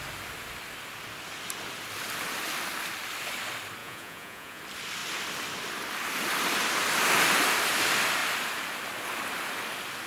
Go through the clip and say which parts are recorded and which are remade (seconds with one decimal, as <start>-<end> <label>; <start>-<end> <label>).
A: 0.0-3.8 recorded; 3.8-4.6 remade; 4.6-10.1 recorded